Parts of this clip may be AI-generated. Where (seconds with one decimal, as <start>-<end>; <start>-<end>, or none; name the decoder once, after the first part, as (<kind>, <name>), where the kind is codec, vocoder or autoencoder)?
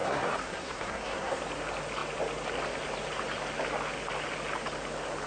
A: 0.0-1.4 (codec, SNAC)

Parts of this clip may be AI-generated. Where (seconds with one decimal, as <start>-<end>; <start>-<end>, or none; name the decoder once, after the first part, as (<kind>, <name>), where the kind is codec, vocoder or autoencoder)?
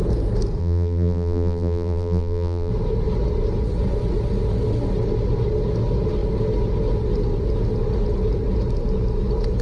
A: 0.6-2.7 (vocoder, BigVGAN v2)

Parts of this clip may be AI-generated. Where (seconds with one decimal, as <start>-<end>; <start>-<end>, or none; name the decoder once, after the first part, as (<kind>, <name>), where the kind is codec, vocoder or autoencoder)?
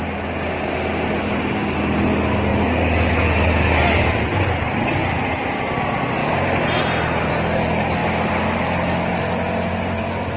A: none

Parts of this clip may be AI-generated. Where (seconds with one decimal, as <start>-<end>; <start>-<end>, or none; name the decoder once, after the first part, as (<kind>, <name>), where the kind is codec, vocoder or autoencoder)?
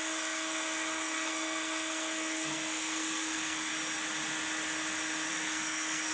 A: 0.0-3.7 (codec, SNAC); 5.3-6.1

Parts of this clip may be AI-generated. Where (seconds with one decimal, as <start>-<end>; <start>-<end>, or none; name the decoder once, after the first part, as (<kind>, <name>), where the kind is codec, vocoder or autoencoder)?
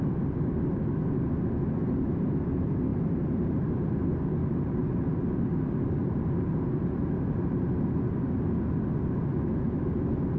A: none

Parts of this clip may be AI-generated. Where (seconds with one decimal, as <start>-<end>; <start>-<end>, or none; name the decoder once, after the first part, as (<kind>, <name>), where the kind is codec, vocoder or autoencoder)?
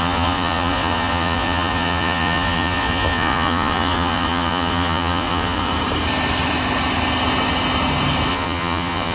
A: 0.0-5.7 (vocoder, Vocos); 8.3-9.1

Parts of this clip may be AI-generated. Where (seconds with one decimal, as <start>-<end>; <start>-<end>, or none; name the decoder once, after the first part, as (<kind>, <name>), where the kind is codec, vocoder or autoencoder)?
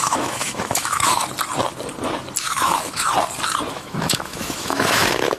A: 0.0-1.2 (autoencoder, DAC-VAE); 2.4-3.1; 3.7-5.4